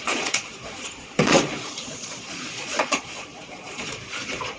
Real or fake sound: fake